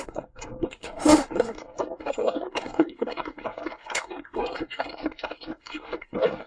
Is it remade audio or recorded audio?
remade